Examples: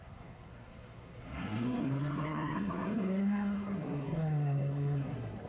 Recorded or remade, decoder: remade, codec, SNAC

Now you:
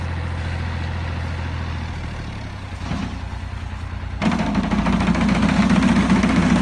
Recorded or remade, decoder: recorded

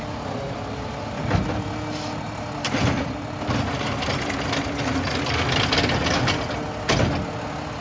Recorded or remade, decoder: recorded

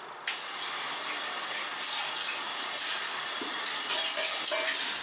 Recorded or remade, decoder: recorded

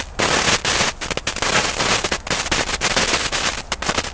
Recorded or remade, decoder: recorded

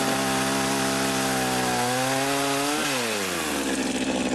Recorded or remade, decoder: recorded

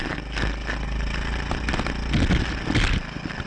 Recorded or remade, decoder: recorded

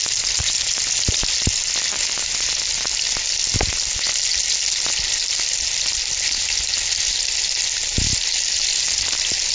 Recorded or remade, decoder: recorded